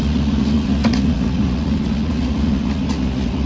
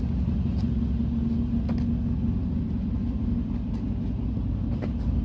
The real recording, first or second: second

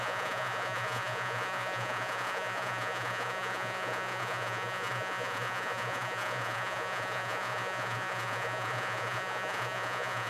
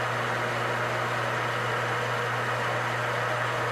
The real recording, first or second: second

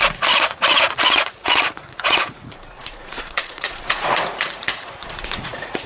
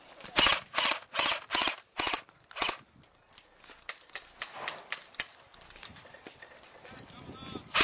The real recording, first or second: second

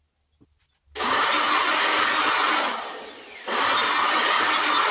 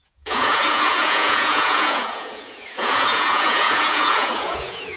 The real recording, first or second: first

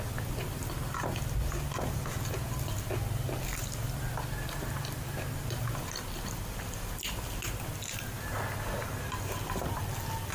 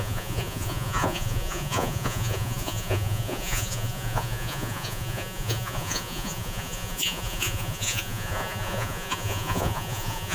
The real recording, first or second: first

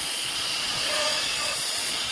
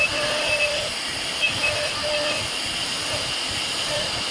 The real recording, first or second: second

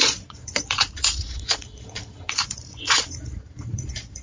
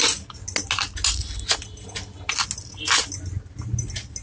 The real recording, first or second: second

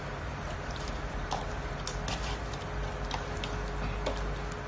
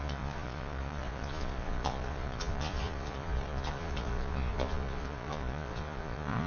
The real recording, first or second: first